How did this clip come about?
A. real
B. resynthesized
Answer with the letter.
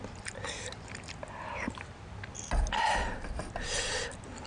A